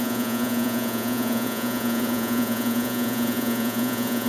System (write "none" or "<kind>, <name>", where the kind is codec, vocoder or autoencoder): vocoder, Vocos